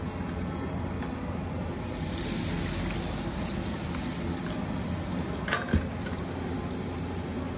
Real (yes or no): yes